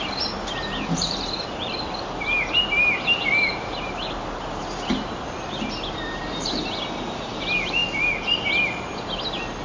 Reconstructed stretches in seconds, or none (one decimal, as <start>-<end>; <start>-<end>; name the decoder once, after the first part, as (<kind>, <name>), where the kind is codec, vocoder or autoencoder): none